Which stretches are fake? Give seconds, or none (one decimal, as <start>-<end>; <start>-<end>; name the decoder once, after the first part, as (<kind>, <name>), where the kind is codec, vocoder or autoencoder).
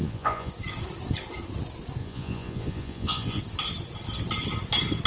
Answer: 0.0-0.5 (vocoder, Vocos); 2.0-3.4